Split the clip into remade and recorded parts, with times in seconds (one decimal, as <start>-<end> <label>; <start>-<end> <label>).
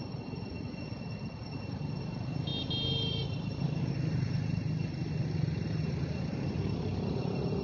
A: 0.0-7.6 recorded